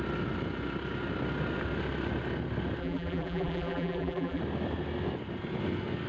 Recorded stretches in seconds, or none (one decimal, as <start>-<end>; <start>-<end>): 0.0-2.8; 4.4-6.1